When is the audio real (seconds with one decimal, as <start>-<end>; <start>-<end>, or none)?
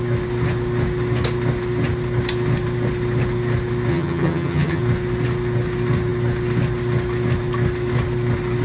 0.0-3.9; 4.8-8.6